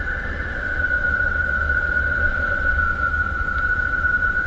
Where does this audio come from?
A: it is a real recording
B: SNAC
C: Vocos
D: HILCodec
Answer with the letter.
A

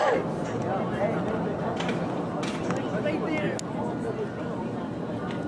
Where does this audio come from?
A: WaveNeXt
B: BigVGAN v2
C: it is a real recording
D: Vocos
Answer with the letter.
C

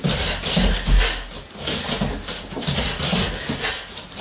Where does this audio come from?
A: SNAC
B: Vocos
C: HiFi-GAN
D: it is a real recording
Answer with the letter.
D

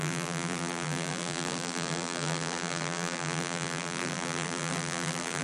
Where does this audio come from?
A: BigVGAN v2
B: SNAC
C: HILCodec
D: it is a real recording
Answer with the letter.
A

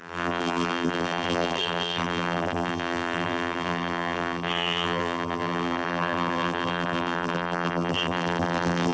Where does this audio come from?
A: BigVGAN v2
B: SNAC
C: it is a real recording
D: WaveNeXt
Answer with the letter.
A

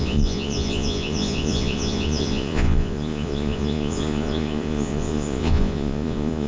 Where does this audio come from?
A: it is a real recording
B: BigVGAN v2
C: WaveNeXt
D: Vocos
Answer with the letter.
D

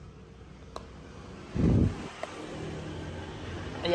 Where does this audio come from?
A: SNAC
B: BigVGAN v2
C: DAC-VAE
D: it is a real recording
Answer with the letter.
D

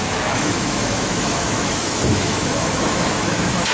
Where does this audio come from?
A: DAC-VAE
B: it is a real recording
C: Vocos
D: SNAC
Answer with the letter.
A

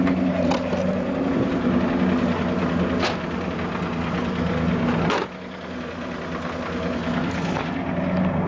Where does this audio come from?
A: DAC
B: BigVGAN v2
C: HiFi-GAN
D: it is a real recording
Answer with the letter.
D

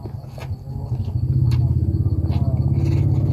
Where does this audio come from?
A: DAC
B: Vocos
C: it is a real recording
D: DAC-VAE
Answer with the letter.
C